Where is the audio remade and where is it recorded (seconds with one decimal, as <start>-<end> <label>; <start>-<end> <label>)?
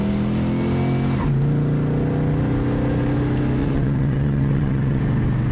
0.0-3.6 recorded; 3.6-5.0 remade; 5.0-5.5 recorded